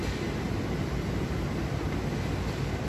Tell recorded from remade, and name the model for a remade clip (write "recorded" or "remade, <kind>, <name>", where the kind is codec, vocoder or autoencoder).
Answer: recorded